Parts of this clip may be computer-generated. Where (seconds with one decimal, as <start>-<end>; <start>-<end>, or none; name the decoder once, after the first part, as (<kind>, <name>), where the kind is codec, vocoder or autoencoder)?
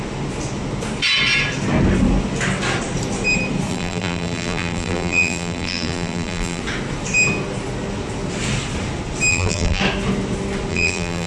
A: 3.7-6.6 (vocoder, BigVGAN v2); 9.3-9.8; 10.7-11.3